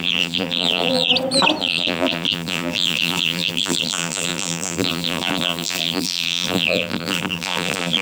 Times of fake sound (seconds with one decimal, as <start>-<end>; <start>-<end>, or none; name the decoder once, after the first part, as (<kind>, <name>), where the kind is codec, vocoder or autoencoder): 0.0-1.1 (vocoder, BigVGAN v2); 1.6-8.0